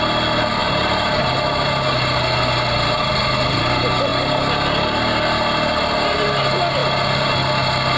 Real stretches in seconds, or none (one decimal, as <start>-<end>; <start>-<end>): 0.0-0.6; 1.2-8.0